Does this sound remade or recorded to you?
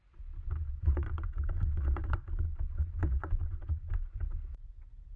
remade